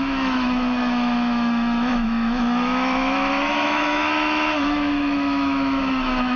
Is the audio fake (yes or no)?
yes